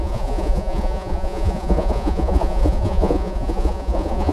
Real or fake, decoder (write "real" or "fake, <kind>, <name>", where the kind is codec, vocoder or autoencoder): fake, vocoder, Vocos